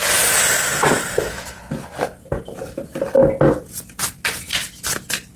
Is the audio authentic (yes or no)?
yes